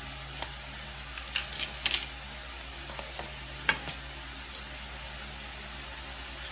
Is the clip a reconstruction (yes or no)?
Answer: no